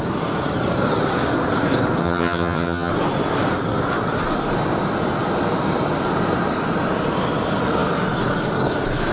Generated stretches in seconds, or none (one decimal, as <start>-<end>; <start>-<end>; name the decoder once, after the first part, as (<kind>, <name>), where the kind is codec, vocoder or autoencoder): 2.0-2.9 (vocoder, HiFi-GAN)